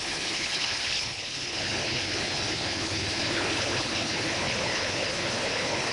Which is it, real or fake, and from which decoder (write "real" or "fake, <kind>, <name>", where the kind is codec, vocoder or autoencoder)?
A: fake, codec, HILCodec